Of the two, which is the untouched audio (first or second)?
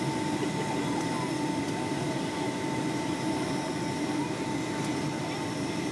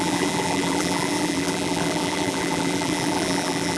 first